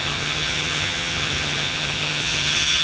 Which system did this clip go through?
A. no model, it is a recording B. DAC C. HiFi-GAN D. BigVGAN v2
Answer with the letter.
C